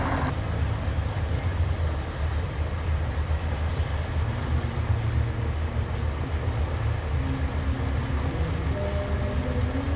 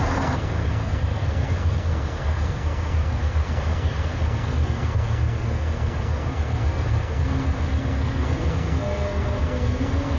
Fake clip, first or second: second